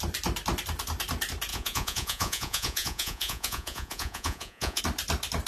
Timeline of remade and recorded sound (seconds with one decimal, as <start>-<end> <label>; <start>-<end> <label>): 0.0-1.5 recorded; 1.5-4.8 remade; 4.8-5.5 recorded